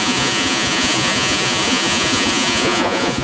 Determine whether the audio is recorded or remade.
remade